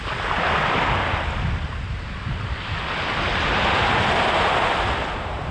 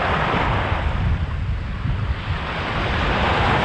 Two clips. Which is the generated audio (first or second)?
second